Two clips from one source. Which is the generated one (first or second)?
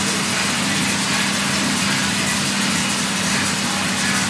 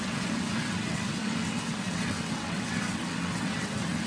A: second